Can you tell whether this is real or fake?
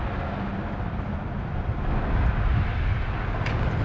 real